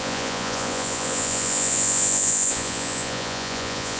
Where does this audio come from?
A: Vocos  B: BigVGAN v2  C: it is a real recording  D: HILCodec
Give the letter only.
A